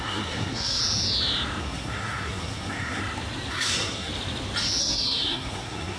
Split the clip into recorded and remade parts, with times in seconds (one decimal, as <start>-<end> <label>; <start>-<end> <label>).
0.0-0.8 remade; 0.8-1.6 recorded; 1.6-3.0 remade; 3.0-3.5 recorded; 3.5-4.1 remade; 4.1-4.8 recorded; 4.8-6.0 remade